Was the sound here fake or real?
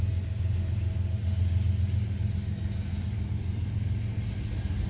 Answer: real